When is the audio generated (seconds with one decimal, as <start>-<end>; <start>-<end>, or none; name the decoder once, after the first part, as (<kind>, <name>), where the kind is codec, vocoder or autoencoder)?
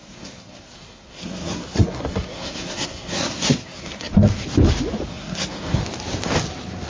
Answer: 0.0-4.1 (codec, SNAC); 5.1-5.8